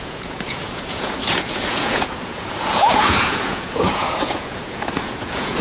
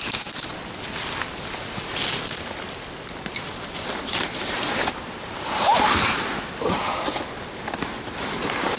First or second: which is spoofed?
first